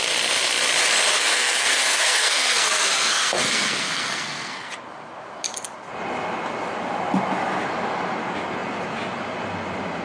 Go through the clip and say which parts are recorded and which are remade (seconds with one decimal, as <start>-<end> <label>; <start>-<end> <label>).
0.0-1.1 recorded; 1.1-4.7 remade; 4.7-10.0 recorded